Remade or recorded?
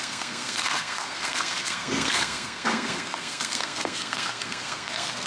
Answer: remade